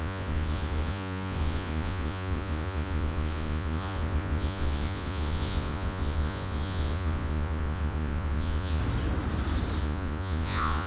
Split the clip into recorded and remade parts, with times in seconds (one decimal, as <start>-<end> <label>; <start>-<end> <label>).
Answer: 0.0-8.8 remade; 8.8-9.8 recorded; 9.8-10.9 remade